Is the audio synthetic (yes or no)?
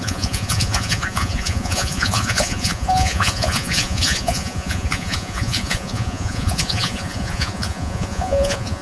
yes